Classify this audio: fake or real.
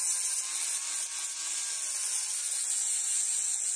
real